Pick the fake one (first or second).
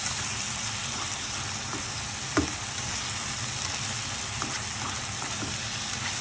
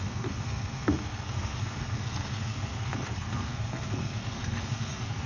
second